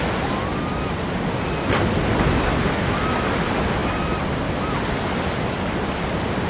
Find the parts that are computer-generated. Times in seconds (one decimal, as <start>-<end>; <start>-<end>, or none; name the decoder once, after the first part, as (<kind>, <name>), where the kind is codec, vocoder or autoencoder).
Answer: none